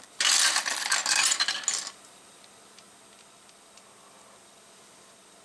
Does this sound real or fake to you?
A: real